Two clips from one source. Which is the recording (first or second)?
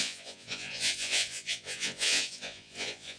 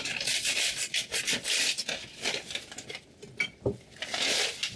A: second